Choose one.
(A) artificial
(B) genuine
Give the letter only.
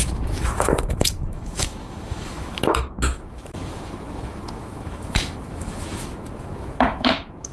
A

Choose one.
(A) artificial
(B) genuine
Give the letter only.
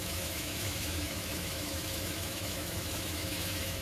A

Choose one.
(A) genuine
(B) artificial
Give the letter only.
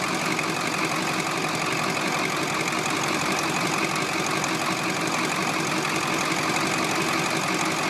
A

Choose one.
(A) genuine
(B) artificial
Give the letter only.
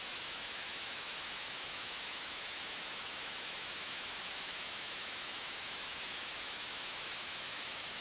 B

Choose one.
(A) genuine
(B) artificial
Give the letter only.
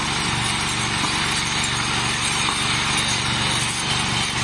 A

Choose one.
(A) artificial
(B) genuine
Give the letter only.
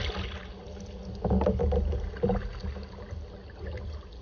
B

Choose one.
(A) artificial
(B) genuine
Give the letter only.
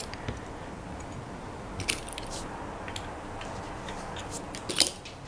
B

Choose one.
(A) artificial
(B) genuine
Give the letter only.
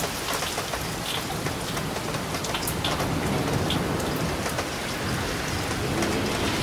B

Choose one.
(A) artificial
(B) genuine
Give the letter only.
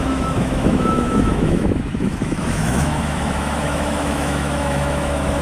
A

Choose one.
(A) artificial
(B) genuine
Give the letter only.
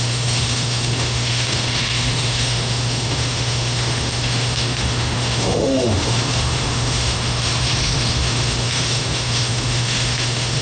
A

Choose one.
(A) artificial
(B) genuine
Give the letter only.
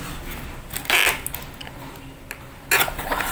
B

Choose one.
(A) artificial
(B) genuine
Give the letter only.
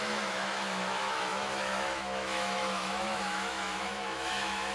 A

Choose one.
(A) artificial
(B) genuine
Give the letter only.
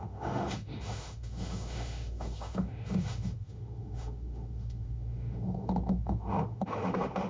A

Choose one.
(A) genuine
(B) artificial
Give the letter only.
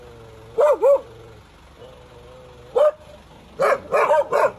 A